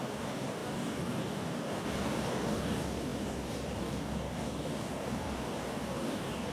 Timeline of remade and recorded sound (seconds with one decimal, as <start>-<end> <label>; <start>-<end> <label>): 0.0-6.5 remade